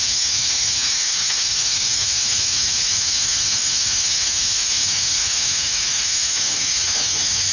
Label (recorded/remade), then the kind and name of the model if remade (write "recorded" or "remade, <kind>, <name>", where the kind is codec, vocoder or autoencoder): remade, autoencoder, DAC-VAE